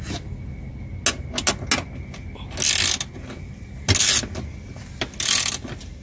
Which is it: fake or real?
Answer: real